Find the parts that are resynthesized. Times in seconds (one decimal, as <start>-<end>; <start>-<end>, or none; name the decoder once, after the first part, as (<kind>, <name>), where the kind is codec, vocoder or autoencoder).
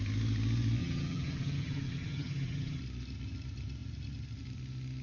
0.8-2.8 (vocoder, HiFi-GAN)